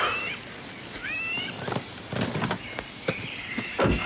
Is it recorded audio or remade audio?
remade